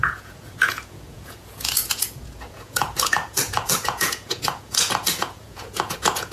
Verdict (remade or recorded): remade